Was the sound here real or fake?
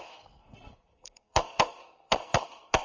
fake